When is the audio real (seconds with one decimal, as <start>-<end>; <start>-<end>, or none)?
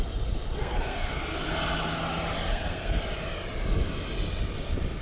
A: 0.0-0.6; 1.2-2.5; 3.0-5.0